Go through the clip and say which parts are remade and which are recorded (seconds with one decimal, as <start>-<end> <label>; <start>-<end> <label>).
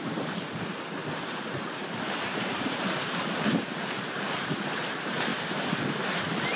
0.0-1.0 remade; 1.0-2.0 recorded; 2.0-5.3 remade; 5.3-5.9 recorded; 5.9-6.6 remade